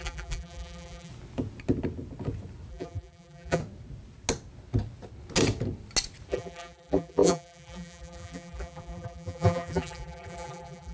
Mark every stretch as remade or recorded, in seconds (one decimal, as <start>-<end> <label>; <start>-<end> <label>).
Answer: 0.0-1.1 remade; 1.1-2.7 recorded; 2.7-3.6 remade; 3.6-6.3 recorded; 6.3-10.9 remade